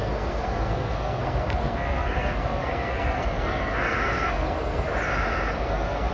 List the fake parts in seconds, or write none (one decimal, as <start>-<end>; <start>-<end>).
0.0-4.9; 5.6-6.1